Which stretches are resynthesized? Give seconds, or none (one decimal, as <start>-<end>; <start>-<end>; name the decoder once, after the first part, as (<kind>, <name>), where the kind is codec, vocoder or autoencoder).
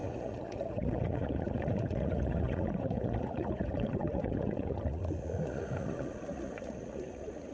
0.0-7.5 (vocoder, Vocos)